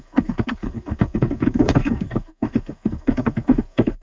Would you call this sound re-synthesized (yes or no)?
yes